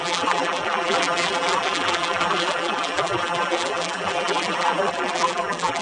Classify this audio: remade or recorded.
remade